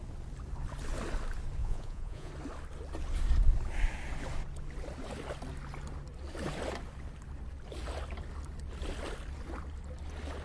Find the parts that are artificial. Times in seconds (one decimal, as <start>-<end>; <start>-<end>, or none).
1.6-2.3